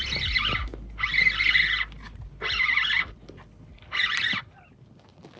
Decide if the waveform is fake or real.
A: real